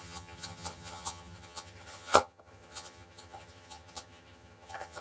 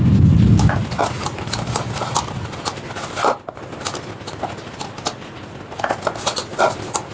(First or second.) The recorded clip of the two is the second